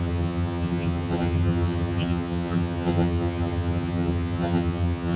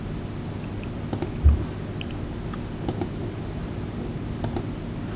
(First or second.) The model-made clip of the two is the first